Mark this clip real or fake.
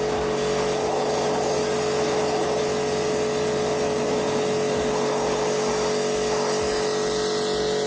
real